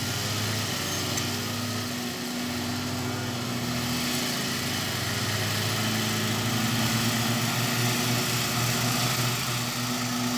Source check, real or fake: real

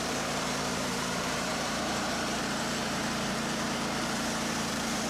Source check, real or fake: fake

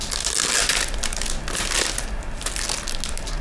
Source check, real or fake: real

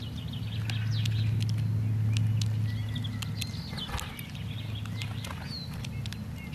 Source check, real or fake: real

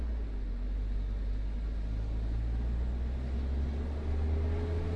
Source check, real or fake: real